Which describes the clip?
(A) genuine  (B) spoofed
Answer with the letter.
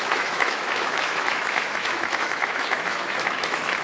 B